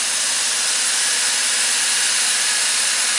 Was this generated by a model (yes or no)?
no